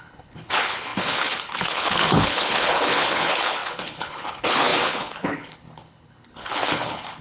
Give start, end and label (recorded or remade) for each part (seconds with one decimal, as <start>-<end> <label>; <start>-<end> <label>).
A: 0.0-7.2 remade